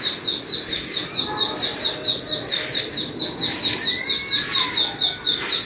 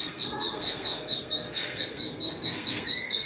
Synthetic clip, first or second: second